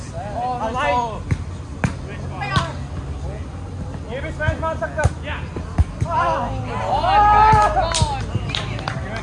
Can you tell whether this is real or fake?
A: real